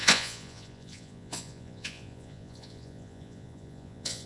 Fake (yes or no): yes